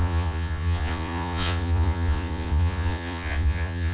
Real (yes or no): no